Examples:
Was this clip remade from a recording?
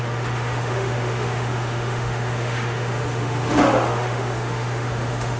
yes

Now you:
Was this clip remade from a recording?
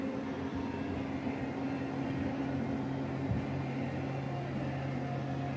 no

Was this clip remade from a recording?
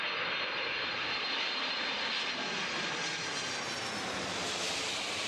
no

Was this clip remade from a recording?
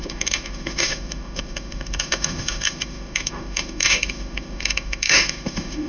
yes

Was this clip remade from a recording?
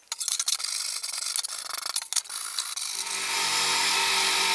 no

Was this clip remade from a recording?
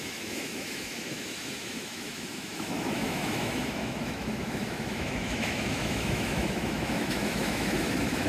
yes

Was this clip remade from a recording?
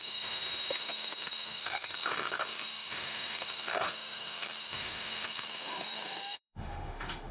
yes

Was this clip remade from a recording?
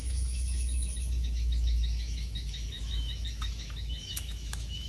yes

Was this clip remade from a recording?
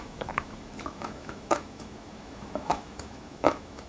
yes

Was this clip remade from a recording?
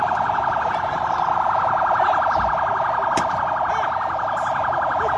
no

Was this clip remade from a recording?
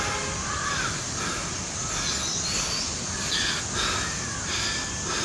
no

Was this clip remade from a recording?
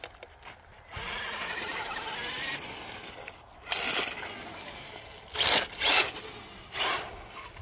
no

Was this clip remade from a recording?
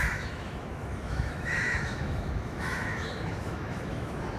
yes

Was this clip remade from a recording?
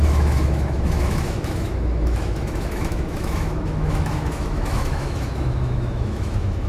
yes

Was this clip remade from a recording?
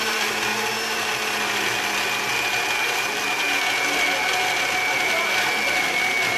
no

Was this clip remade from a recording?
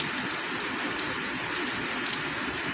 no